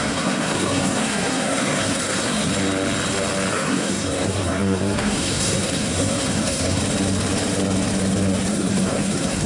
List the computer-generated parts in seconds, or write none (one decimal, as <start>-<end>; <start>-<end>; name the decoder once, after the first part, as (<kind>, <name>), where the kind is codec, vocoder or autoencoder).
0.0-2.5 (codec, SNAC); 3.5-6.8; 8.5-9.5